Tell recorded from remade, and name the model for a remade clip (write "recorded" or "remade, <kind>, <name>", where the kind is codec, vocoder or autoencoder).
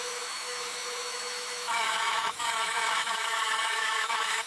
remade, autoencoder, DAC-VAE